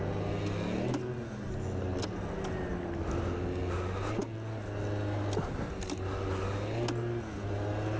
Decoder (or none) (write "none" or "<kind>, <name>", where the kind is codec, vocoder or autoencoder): none